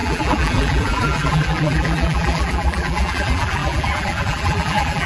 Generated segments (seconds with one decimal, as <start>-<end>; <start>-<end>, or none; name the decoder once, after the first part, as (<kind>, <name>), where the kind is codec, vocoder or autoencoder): 0.0-5.1 (vocoder, BigVGAN v2)